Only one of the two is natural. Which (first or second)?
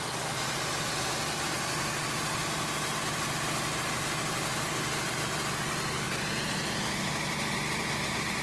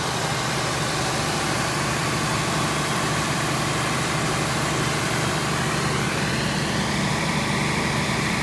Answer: first